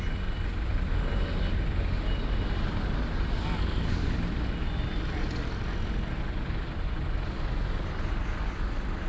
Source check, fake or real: real